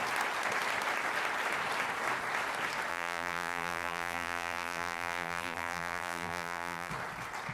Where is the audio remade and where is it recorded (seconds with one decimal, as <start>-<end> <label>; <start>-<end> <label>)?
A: 0.0-2.9 recorded; 2.9-6.9 remade; 6.9-7.5 recorded